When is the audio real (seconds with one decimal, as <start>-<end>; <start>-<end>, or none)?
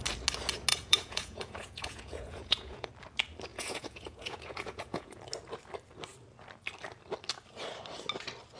0.0-0.7; 2.9-3.5; 5.2-8.6